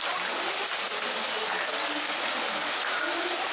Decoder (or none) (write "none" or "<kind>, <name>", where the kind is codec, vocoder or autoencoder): none